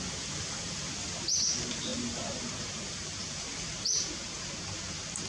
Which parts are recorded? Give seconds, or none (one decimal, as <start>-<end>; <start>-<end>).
0.0-5.3